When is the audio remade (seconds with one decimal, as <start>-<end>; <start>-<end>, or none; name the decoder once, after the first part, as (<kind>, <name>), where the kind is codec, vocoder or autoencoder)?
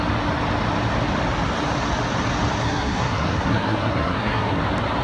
2.6-4.6 (codec, SNAC)